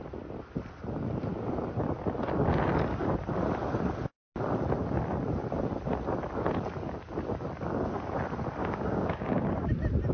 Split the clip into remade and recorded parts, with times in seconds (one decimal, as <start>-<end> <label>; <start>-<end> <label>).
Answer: 0.0-8.6 recorded; 8.6-9.5 remade; 9.5-10.1 recorded